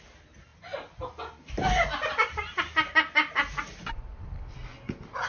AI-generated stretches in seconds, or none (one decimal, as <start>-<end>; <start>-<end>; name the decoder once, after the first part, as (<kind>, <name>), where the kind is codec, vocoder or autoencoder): none